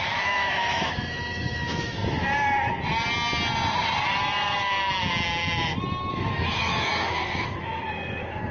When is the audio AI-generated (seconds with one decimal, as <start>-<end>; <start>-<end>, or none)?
0.0-2.0; 6.1-8.5